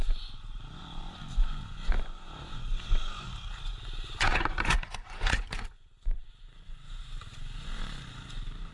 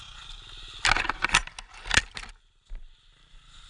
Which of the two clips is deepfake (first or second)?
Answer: first